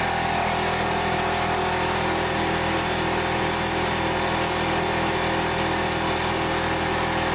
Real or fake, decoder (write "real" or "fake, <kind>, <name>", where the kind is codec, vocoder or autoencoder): real